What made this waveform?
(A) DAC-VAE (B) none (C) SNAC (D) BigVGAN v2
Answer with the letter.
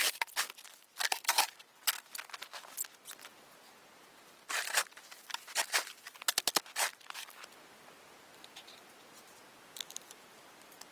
B